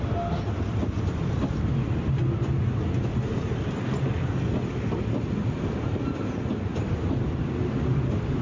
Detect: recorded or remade recorded